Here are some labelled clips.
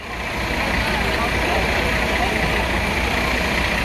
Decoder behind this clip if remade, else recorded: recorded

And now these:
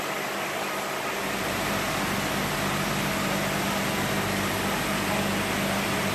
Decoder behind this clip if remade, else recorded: recorded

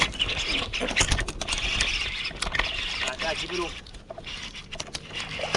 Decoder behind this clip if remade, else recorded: recorded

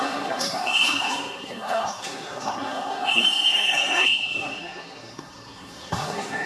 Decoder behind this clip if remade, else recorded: remade, codec, SNAC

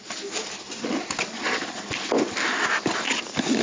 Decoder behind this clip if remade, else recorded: recorded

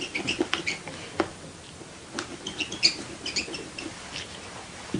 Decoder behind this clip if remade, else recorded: recorded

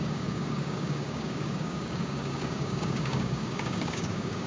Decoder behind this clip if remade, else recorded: remade, codec, DAC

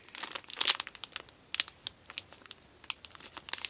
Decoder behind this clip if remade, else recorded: recorded